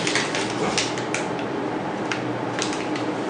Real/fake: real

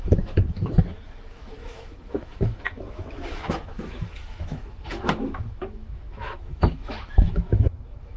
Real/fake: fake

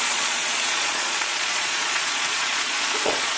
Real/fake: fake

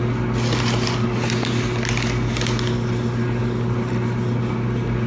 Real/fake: real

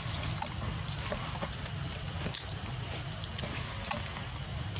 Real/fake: real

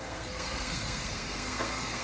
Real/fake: fake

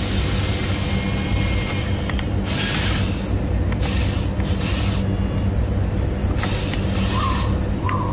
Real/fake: real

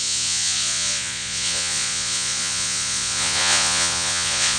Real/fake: fake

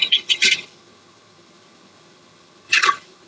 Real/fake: fake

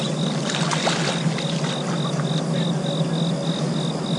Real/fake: real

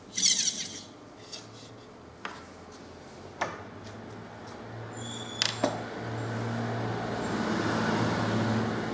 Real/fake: real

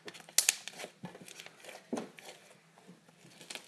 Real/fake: real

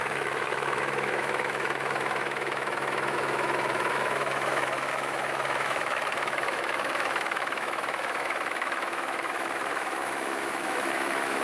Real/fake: fake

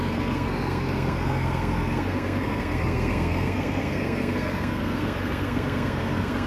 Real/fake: fake